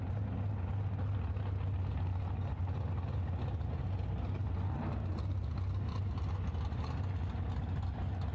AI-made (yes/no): no